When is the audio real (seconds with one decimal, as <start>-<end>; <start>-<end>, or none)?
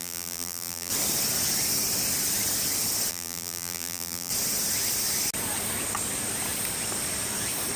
0.9-3.1; 4.3-7.8